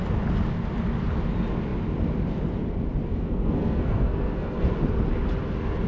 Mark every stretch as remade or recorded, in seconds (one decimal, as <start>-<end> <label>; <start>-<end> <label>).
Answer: 0.0-3.1 recorded; 3.1-4.7 remade; 4.7-5.9 recorded